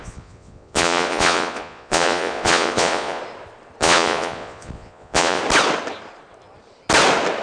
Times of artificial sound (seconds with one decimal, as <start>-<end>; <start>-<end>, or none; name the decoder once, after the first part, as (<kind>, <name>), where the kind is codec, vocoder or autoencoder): 0.0-3.2 (vocoder, Vocos); 3.8-5.4